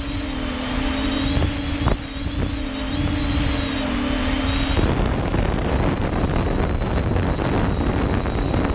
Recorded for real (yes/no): yes